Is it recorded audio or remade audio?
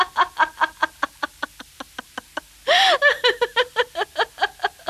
recorded